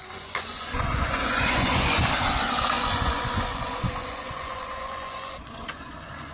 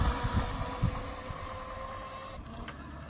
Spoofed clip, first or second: first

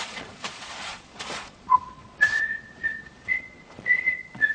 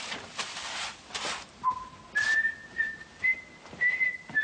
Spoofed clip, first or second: first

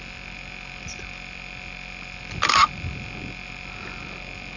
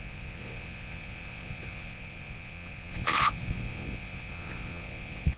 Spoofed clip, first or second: second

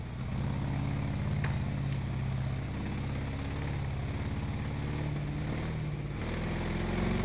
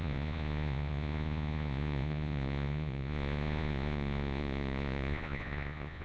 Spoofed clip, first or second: second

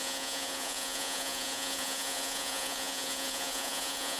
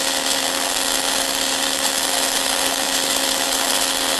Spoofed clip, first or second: first